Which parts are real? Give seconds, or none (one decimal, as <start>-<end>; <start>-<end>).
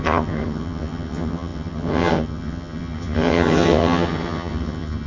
none